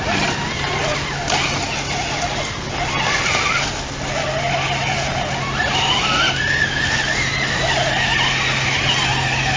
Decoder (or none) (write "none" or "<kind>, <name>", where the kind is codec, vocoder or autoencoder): none